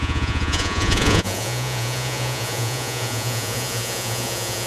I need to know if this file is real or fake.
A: fake